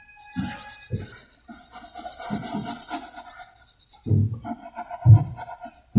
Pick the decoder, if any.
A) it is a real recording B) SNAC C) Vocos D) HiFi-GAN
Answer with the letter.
A